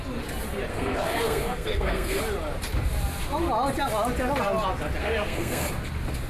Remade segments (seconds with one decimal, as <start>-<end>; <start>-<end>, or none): 0.7-2.2; 5.0-5.7